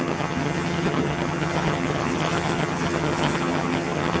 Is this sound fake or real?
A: fake